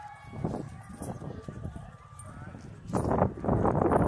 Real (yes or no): yes